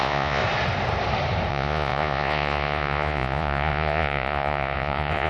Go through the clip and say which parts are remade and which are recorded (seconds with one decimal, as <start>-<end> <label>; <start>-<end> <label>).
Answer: 0.0-0.4 remade; 0.4-1.5 recorded; 1.5-5.3 remade